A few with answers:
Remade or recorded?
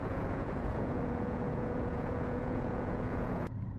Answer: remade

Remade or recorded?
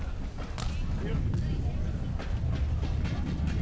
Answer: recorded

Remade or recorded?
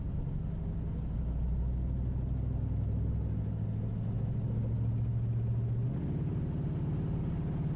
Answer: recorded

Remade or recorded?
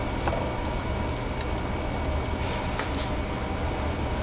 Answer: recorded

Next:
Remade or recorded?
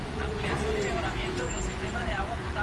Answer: remade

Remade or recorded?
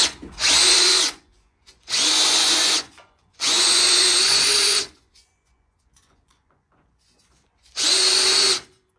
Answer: remade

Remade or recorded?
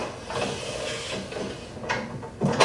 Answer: recorded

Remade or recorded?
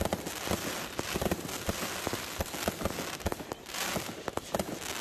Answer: recorded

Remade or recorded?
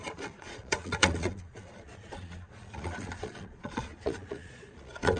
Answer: remade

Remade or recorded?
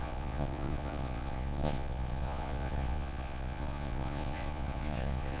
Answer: remade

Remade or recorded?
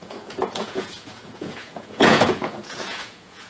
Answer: remade